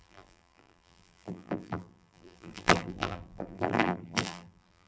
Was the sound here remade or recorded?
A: remade